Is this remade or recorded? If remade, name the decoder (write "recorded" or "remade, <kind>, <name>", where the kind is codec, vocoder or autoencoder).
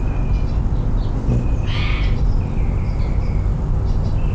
recorded